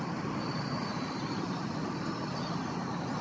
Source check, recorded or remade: recorded